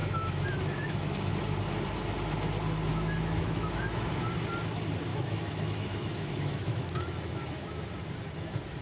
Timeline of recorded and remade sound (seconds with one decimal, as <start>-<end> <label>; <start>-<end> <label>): 0.0-1.3 remade; 1.3-2.9 recorded; 2.9-4.1 remade; 4.1-5.1 recorded; 5.1-7.8 remade; 7.8-8.8 recorded